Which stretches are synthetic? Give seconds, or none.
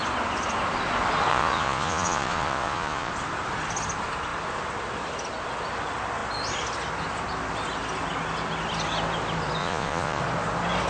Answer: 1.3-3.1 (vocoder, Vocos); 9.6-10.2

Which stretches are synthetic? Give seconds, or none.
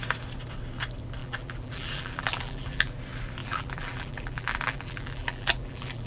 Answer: 1.2-2.9 (vocoder, BigVGAN v2); 3.4-6.1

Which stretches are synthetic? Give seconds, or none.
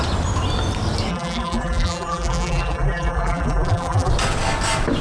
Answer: 1.1-4.1 (vocoder, BigVGAN v2)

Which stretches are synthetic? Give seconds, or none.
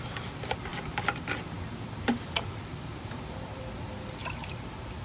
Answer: 0.7-2.3 (vocoder, BigVGAN v2); 2.9-3.6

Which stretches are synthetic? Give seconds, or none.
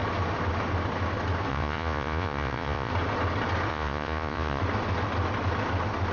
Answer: 1.5-2.9 (vocoder, Vocos); 3.7-4.6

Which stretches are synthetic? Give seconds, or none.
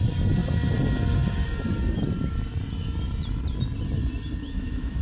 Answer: 4.4-5.0 (autoencoder, DAC-VAE)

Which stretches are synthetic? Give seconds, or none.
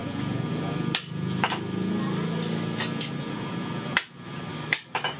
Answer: 4.5-5.2 (codec, DAC)